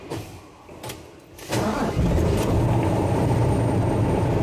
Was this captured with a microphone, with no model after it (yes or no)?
yes